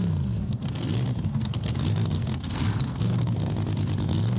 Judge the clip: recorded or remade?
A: remade